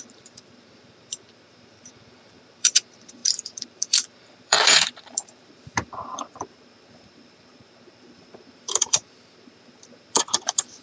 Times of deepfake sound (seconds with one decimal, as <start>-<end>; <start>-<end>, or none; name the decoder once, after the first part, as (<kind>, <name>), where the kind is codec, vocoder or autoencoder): 0.0-10.8 (vocoder, BigVGAN v2)